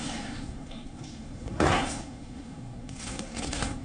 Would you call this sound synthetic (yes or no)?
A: yes